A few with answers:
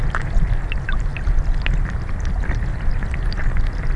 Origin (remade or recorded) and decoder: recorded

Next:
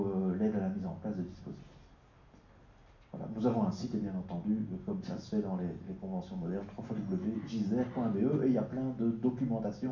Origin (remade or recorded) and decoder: recorded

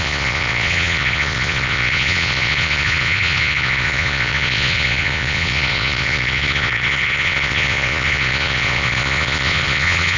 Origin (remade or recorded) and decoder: remade, vocoder, Vocos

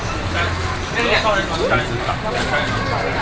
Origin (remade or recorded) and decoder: recorded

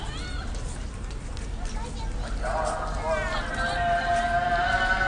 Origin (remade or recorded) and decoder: recorded